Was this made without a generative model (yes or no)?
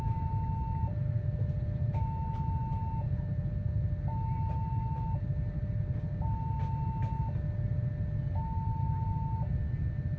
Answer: yes